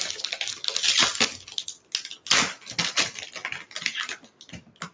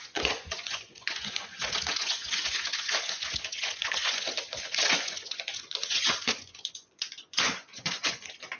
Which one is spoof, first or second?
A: second